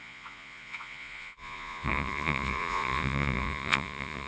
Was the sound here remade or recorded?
remade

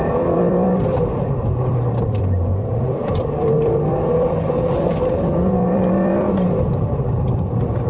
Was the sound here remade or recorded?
remade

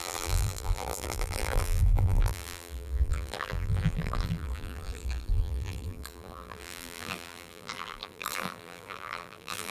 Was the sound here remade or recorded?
remade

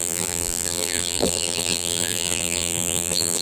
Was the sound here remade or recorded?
remade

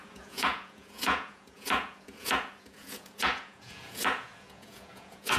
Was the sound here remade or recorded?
remade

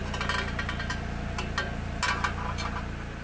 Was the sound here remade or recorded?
recorded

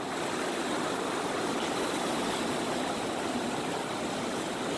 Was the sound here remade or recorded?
recorded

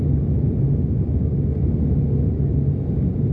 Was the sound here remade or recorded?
recorded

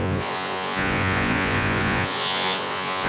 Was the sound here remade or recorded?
remade